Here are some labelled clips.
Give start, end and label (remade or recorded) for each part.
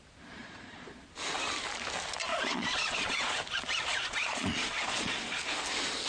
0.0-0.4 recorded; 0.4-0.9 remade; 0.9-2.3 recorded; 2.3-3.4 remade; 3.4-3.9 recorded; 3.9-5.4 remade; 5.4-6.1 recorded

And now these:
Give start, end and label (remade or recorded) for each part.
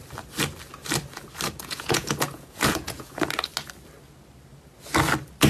0.0-1.6 recorded; 1.6-3.1 remade; 3.1-5.5 recorded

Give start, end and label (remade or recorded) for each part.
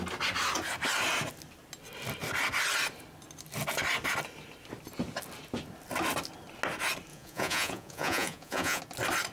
0.0-7.1 recorded; 7.1-8.8 remade; 8.8-9.3 recorded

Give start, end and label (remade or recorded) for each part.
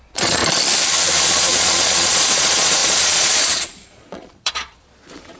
0.0-0.4 remade; 0.4-1.2 recorded; 1.2-5.4 remade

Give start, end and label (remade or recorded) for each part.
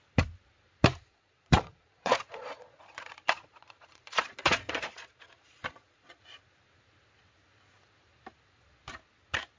0.0-1.0 recorded; 1.0-6.2 remade; 6.2-9.6 recorded